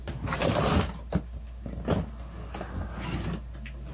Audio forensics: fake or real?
real